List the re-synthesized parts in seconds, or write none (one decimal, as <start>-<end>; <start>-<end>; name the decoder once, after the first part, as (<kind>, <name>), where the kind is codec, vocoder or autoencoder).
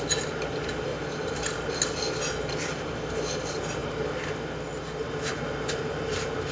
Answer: 0.9-1.7 (vocoder, BigVGAN v2)